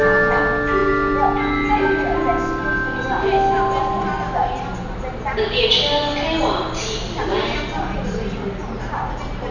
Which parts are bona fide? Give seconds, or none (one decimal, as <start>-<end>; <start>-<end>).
0.0-9.5